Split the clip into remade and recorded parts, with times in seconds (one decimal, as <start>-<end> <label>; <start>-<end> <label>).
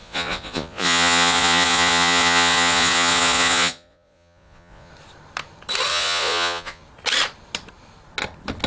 0.0-4.9 remade; 4.9-5.9 recorded; 5.9-6.8 remade; 6.8-8.7 recorded